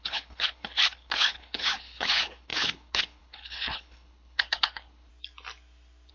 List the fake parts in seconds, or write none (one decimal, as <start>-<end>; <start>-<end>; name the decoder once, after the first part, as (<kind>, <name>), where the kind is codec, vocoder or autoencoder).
0.0-5.1 (codec, HILCodec)